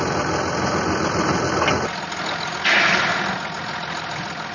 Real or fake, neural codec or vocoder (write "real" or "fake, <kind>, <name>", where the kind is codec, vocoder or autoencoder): real